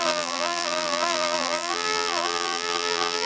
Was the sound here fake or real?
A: fake